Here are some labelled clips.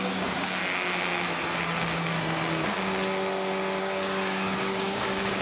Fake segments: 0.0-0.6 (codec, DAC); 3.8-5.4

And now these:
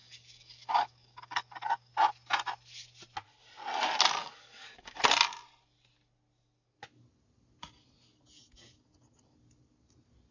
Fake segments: 0.0-1.9 (codec, DAC); 4.2-5.0

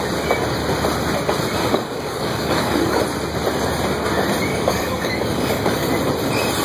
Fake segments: 1.6-3.0 (codec, DAC); 4.5-5.9